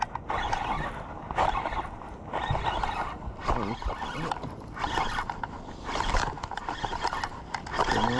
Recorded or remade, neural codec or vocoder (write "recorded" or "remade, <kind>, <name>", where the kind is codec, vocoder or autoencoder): recorded